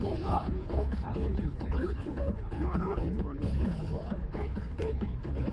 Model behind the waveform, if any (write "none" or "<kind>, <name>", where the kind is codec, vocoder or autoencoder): codec, HILCodec